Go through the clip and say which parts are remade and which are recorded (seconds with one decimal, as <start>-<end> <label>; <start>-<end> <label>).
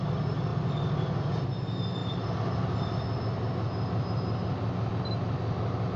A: 0.0-6.0 recorded